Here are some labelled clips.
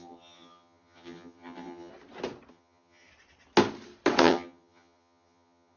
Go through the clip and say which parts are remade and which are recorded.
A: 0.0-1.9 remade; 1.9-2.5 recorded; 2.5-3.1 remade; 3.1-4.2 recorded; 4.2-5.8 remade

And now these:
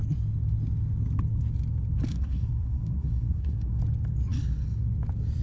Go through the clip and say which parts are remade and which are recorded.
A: 0.0-2.1 recorded; 2.1-3.8 remade; 3.8-5.4 recorded